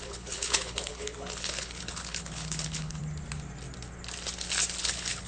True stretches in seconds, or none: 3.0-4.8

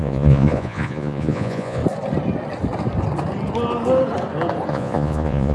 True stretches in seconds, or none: 1.8-4.7

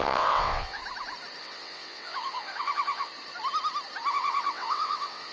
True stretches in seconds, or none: 0.8-1.4; 3.1-4.1

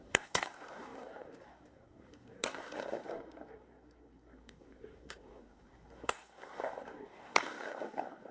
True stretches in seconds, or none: none

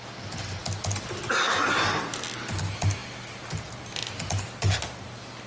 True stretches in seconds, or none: 0.0-5.5